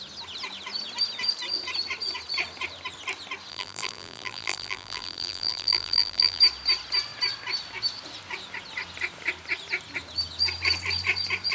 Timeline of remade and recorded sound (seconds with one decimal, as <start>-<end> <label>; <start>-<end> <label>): 0.0-3.5 recorded; 3.5-6.4 remade; 6.4-11.5 recorded